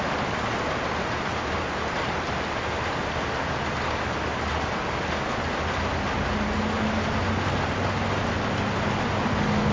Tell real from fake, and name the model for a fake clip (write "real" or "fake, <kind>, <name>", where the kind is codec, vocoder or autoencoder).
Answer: real